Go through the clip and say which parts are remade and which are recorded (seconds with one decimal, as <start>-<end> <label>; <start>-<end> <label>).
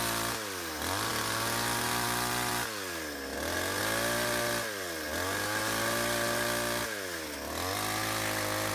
0.0-8.7 recorded